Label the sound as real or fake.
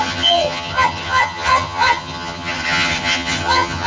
fake